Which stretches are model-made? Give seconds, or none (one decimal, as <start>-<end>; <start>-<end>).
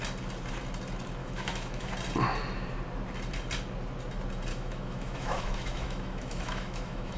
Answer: 1.2-1.9; 4.5-7.2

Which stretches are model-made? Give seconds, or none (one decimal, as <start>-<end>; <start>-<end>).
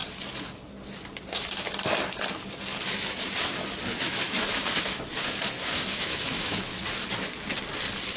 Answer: 4.0-5.1; 5.6-6.8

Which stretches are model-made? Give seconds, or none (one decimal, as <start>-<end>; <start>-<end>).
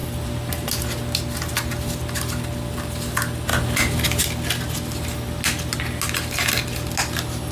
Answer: none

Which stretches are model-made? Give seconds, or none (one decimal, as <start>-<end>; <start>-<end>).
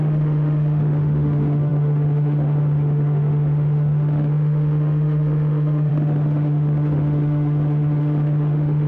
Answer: 0.0-8.9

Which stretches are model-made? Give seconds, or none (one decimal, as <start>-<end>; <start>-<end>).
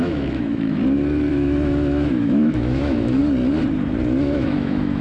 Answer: 0.0-0.8; 1.3-3.2; 4.2-5.0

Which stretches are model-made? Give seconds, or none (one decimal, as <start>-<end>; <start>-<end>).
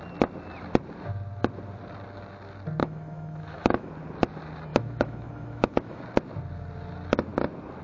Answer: 2.8-3.9; 4.7-6.0